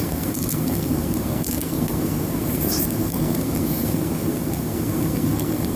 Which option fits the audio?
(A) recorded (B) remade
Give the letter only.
B